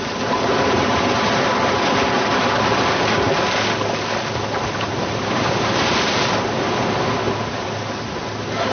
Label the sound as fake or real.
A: real